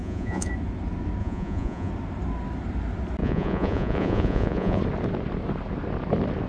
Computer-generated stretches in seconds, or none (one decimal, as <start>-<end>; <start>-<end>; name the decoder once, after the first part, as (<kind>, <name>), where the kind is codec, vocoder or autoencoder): 0.0-0.5 (vocoder, Vocos); 1.2-1.9; 3.2-4.8